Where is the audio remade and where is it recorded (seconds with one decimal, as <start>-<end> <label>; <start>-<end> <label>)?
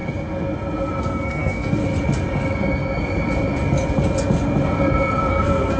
0.0-1.0 recorded; 1.0-1.8 remade; 1.8-5.3 recorded; 5.3-5.8 remade